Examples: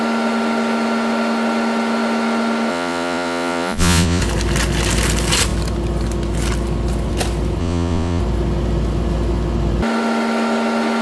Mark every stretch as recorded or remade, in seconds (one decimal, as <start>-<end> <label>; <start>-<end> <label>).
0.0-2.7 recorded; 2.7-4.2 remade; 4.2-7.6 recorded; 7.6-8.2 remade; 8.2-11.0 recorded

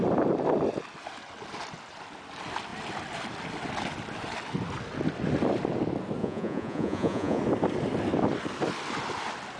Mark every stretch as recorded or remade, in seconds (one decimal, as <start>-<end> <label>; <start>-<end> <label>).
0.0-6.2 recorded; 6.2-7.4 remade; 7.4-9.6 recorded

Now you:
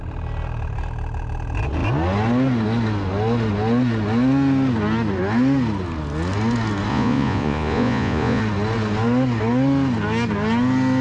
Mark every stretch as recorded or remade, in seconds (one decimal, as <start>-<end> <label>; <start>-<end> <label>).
0.0-6.9 recorded; 6.9-8.4 remade; 8.4-11.0 recorded

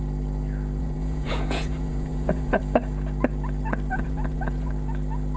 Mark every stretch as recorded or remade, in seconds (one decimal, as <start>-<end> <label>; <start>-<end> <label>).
0.0-0.8 recorded; 0.8-2.6 remade; 2.6-3.9 recorded; 3.9-4.7 remade; 4.7-5.4 recorded